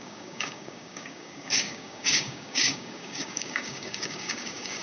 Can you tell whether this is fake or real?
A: fake